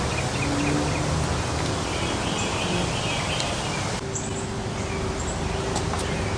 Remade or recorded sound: recorded